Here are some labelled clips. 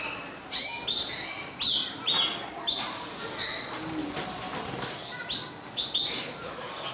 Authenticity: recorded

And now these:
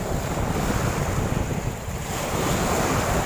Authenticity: recorded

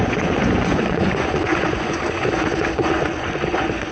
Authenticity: remade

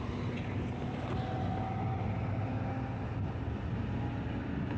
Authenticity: recorded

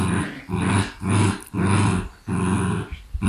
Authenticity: recorded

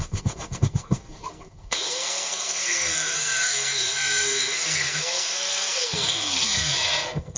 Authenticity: remade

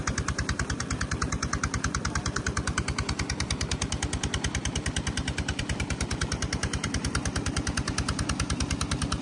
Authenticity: remade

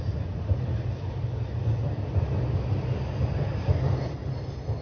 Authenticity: recorded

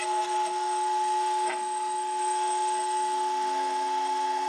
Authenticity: remade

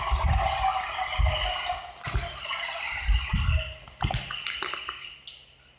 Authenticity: recorded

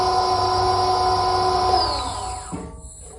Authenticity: recorded